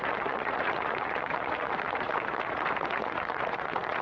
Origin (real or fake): fake